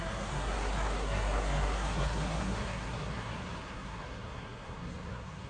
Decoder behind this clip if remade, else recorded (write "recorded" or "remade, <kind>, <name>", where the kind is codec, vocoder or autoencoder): remade, codec, SNAC